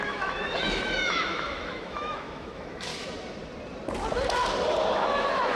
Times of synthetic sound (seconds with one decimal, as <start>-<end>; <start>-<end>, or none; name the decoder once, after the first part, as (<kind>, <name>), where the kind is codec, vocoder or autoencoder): 0.0-2.9 (autoencoder, DAC-VAE); 4.9-5.6

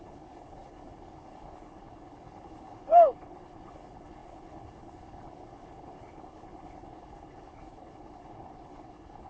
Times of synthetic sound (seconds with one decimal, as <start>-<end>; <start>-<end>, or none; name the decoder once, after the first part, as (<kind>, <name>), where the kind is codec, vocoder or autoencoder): 0.0-9.3 (codec, HILCodec)

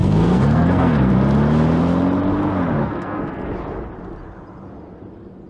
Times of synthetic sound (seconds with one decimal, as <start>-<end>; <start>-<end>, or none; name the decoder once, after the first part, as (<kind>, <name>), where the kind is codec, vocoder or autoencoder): 0.0-1.1 (codec, SNAC); 2.8-3.5

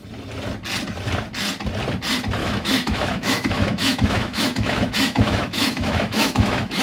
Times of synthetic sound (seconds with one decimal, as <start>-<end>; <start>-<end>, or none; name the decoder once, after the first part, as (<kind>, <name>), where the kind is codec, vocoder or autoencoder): 2.4-6.8 (autoencoder, DAC-VAE)

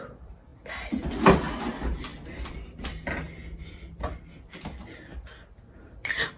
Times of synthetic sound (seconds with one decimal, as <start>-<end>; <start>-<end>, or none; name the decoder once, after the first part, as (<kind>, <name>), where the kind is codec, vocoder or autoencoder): 0.0-0.5 (vocoder, BigVGAN v2); 1.7-2.1; 5.8-6.4

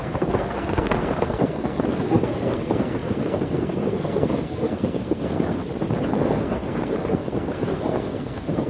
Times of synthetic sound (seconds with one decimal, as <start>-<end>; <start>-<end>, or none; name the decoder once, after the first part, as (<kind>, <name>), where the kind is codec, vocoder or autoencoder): 0.0-5.6 (codec, SNAC); 6.1-8.7